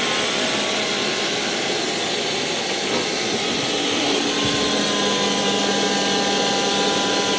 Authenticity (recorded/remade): recorded